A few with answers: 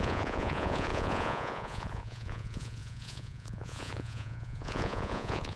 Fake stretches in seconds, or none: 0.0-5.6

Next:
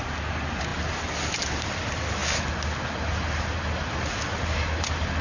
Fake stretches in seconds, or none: none

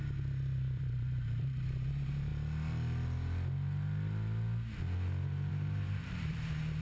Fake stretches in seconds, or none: 0.0-2.3; 5.5-6.8

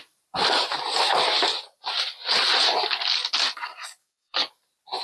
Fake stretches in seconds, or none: 4.0-4.5

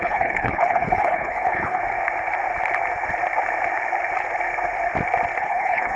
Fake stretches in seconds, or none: 0.0-1.8; 5.4-6.0